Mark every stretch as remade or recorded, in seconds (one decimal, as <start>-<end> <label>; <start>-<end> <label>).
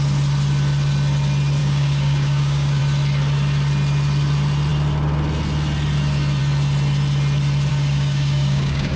0.0-1.6 recorded; 1.6-2.8 remade; 2.8-7.7 recorded; 7.7-9.0 remade